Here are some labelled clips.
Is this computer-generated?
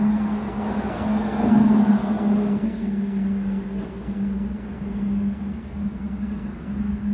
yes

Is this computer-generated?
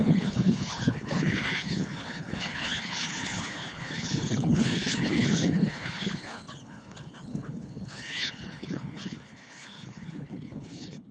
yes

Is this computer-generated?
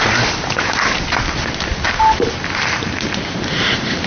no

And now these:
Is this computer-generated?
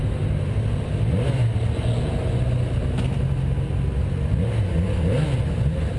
no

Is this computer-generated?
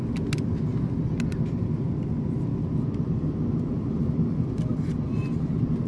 no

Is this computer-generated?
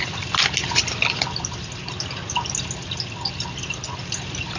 yes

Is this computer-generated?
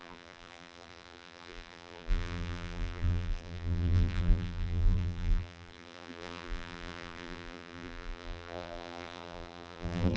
yes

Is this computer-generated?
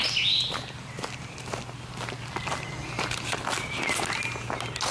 no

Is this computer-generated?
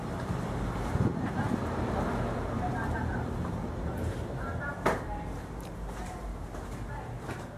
yes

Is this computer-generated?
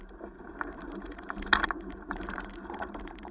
yes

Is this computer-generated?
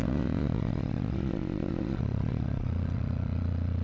yes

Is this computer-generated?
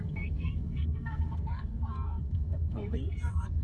yes